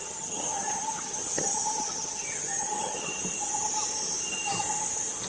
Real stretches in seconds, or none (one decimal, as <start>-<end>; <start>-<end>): 3.2-5.3

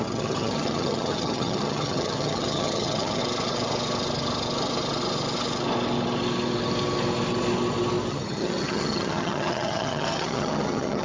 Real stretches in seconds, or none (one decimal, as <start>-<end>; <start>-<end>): 3.2-8.1

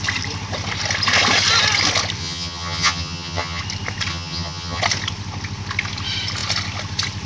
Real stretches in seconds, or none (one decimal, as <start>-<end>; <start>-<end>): 0.0-2.2; 3.6-4.1; 4.8-7.3

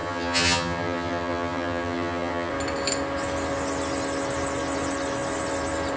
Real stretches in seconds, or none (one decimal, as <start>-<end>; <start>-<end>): 2.5-6.0

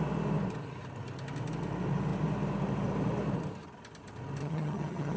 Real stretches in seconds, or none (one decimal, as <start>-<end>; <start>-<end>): 0.0-4.4